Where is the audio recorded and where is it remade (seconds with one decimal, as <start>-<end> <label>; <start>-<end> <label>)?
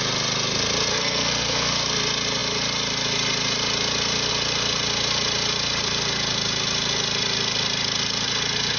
0.0-0.9 recorded; 0.9-1.7 remade; 1.7-8.8 recorded